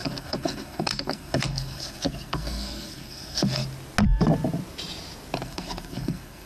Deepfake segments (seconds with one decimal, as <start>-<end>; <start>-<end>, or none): 0.0-3.6; 5.4-6.5